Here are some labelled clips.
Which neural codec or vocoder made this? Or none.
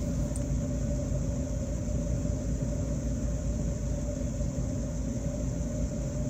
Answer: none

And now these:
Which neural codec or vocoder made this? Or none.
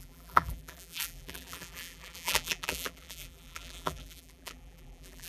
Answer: vocoder, BigVGAN v2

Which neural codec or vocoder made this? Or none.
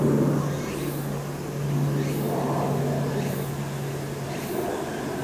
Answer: none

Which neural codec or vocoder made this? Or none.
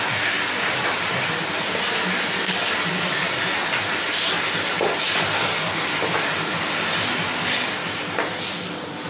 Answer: none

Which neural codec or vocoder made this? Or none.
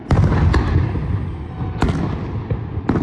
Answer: none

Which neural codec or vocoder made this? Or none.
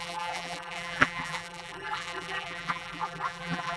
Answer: vocoder, BigVGAN v2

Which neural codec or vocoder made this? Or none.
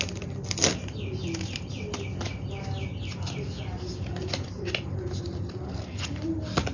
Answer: none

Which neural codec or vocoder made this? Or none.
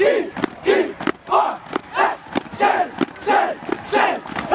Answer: vocoder, BigVGAN v2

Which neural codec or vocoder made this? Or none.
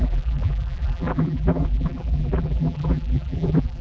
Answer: vocoder, BigVGAN v2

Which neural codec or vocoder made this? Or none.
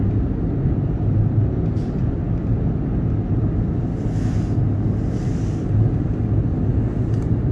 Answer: none